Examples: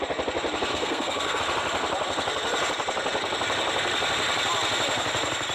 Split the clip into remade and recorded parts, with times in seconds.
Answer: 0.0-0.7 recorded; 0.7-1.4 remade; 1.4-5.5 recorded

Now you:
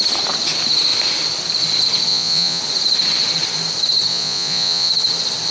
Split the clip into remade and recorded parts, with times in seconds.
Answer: 0.0-2.1 recorded; 2.1-2.6 remade; 2.6-4.1 recorded; 4.1-4.9 remade; 4.9-5.5 recorded

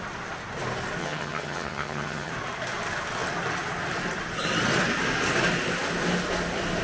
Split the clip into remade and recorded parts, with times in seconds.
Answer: 0.0-1.0 recorded; 1.0-2.3 remade; 2.3-6.8 recorded

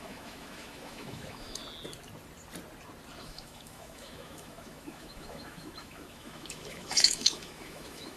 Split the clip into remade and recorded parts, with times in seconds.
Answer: 0.0-1.6 remade; 1.6-3.2 recorded; 3.2-8.2 remade